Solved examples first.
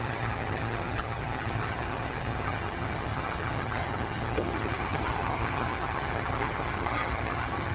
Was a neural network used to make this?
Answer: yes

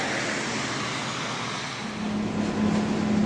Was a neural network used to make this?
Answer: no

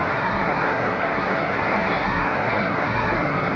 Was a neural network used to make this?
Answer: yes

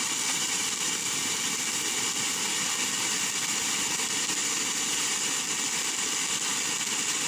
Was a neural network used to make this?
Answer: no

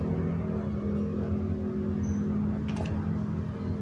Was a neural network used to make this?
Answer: no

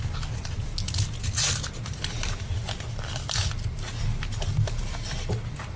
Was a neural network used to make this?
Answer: no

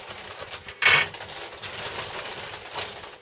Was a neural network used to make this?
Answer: no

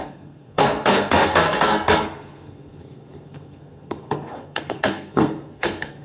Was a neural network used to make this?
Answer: yes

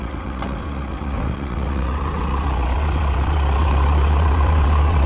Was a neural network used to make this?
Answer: yes